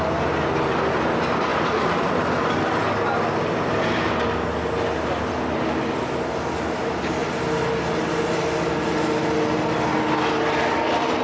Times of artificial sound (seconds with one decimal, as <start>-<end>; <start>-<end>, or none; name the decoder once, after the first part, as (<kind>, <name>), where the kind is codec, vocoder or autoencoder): none